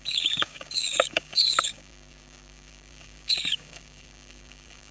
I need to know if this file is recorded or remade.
remade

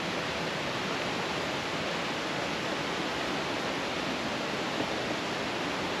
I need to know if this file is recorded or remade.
recorded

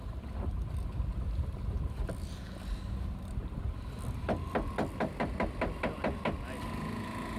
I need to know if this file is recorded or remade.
recorded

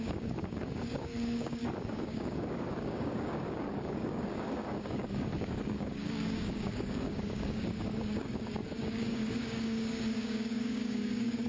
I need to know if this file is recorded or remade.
remade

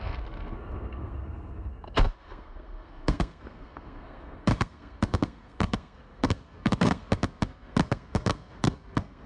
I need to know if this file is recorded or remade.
remade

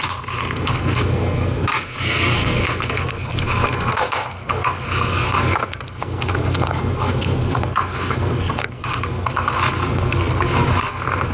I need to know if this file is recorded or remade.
remade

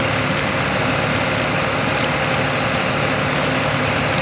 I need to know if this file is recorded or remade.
recorded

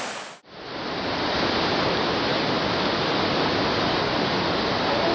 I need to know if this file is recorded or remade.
recorded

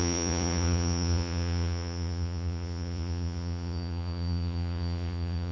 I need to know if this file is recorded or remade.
remade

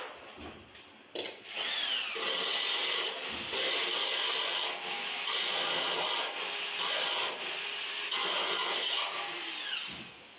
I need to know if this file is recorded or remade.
recorded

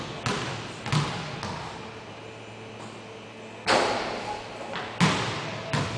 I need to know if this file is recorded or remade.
recorded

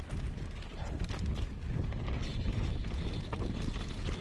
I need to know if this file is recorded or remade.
recorded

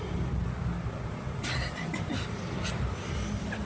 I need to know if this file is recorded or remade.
remade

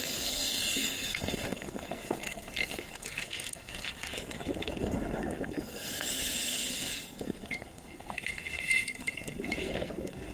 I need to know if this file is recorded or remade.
remade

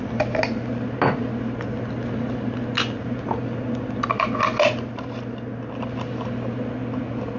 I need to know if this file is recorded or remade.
recorded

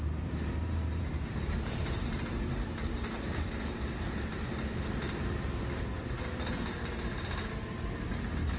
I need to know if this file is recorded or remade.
remade